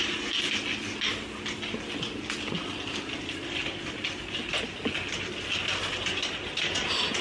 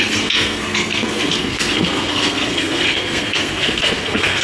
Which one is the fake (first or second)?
second